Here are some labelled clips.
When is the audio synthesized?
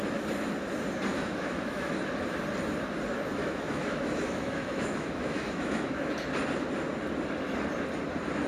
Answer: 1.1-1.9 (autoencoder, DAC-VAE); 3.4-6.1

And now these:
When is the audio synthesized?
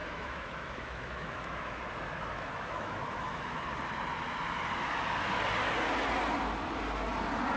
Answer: 0.0-1.8 (autoencoder, DAC-VAE); 2.3-3.6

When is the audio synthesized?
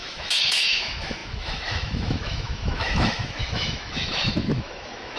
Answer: 0.0-5.2 (autoencoder, DAC-VAE)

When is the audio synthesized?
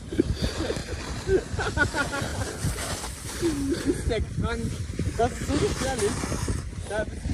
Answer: none